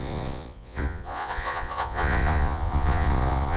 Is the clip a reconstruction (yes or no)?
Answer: yes